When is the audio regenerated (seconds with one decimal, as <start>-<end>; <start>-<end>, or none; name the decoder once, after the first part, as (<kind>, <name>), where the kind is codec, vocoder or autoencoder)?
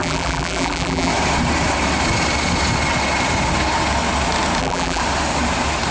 0.0-1.1 (vocoder, BigVGAN v2); 4.6-5.0